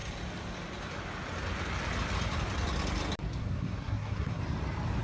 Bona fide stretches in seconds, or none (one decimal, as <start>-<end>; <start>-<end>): 0.0-3.4; 4.4-5.0

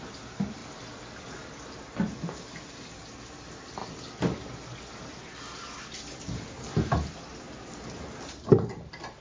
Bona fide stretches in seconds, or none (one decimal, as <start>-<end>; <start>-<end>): 0.0-7.3; 8.6-9.2